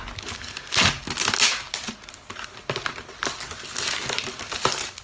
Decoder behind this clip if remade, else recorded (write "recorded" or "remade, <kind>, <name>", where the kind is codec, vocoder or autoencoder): recorded